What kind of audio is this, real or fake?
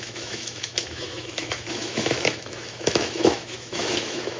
fake